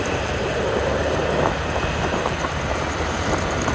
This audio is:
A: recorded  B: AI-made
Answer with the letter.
B